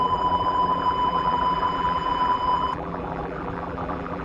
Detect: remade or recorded remade